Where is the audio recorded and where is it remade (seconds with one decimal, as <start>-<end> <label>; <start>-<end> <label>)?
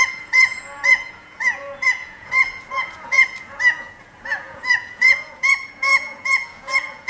0.0-7.1 remade